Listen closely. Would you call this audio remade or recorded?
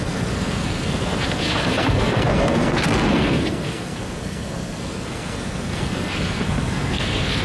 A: remade